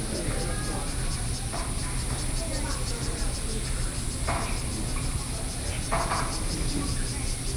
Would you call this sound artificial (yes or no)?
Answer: no